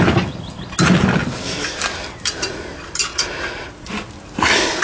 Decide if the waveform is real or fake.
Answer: real